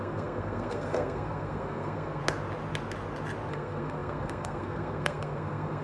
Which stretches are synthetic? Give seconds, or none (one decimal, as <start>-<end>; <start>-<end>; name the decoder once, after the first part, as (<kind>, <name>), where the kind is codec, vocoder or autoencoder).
0.0-2.2 (codec, SNAC); 3.5-5.8